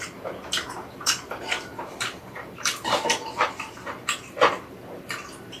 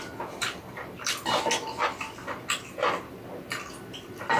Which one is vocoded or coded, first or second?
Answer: first